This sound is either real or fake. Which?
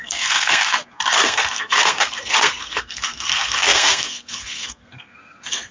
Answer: fake